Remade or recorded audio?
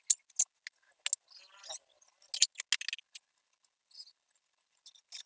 recorded